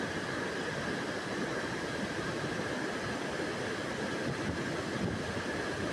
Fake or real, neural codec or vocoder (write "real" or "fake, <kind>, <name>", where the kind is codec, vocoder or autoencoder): real